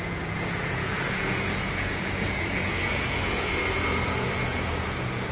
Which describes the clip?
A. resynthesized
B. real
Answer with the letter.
A